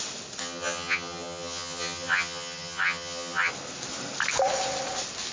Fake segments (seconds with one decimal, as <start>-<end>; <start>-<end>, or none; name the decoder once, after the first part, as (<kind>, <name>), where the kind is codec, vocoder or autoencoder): 0.4-3.5 (vocoder, HiFi-GAN)